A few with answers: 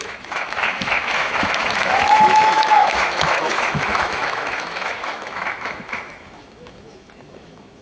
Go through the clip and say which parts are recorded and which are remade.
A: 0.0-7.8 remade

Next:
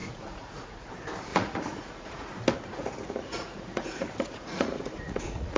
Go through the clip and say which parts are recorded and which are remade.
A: 0.0-0.9 remade; 0.9-1.3 recorded; 1.3-2.3 remade; 2.3-2.7 recorded; 2.7-5.6 remade

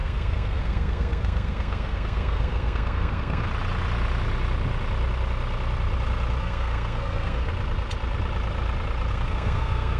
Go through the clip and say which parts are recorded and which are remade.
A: 0.0-3.5 remade; 3.5-6.4 recorded; 6.4-7.5 remade; 7.5-9.1 recorded; 9.1-10.0 remade

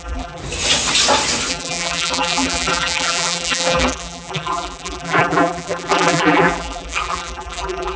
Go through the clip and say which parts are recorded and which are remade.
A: 0.0-0.4 remade; 0.4-1.5 recorded; 1.5-8.0 remade